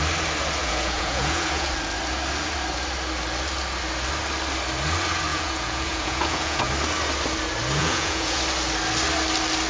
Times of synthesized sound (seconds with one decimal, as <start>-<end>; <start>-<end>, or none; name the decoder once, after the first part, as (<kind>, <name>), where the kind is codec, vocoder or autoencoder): 0.6-1.7 (vocoder, Vocos); 5.3-6.7; 7.8-8.4